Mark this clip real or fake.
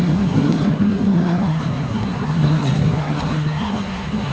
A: fake